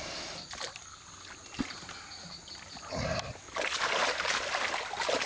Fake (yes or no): no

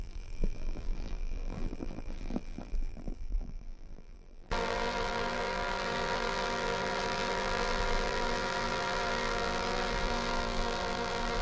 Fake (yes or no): yes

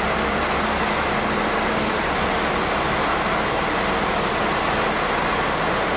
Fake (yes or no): no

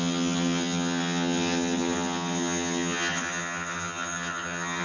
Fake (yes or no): yes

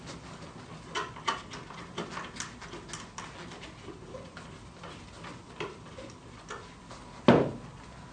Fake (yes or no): no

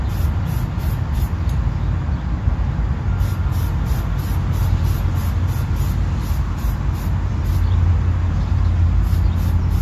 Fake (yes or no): no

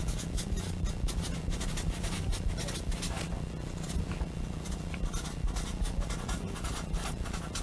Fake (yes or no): no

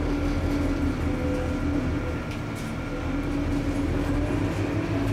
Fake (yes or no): no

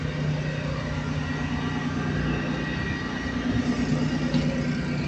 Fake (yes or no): no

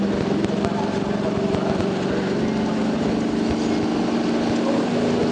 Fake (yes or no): no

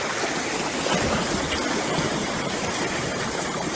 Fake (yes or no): no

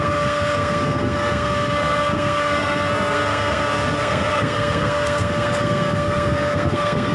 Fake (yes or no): yes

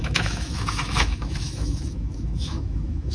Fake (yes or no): yes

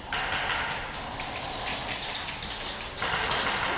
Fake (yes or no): no